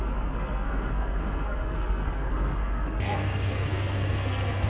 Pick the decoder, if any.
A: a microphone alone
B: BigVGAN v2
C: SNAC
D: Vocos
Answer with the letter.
C